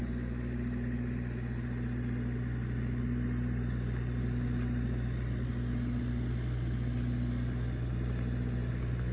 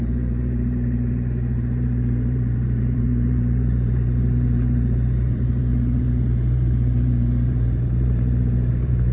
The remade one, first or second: second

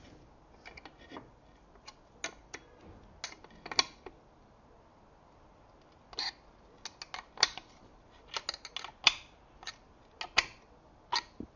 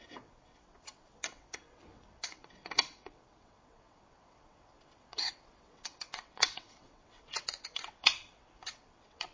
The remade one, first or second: second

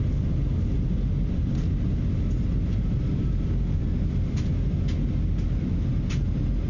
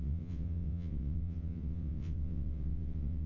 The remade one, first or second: second